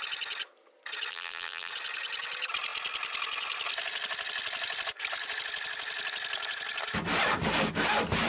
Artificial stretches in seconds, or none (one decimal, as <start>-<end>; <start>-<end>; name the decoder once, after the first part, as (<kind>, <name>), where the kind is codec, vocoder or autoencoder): 1.1-1.7 (vocoder, BigVGAN v2)